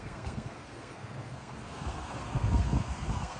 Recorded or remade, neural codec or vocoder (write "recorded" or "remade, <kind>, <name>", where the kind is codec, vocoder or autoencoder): remade, codec, SNAC